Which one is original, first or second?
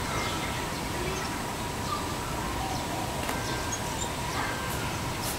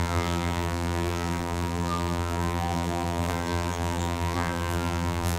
first